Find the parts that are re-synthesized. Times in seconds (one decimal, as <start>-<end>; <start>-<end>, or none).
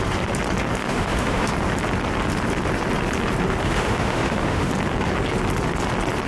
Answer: 0.8-1.5; 3.6-4.7